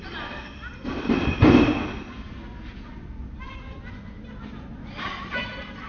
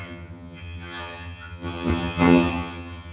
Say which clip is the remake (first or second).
second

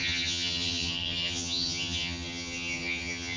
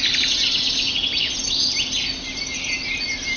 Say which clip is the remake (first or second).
first